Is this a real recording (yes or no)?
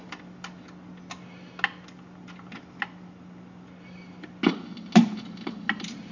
yes